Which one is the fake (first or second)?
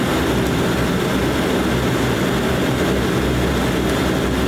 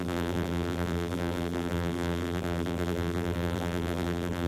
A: second